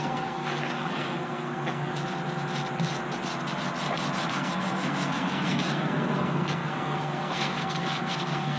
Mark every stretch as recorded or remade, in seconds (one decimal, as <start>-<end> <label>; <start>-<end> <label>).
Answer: 0.0-1.9 remade; 1.9-4.3 recorded; 4.3-8.6 remade